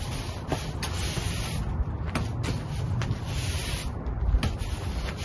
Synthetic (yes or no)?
no